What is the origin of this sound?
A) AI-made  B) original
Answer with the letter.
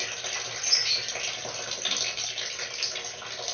B